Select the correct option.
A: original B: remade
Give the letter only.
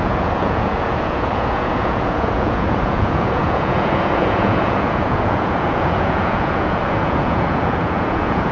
B